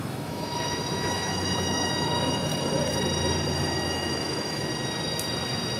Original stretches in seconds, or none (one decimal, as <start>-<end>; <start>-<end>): 2.5-3.8; 4.7-5.8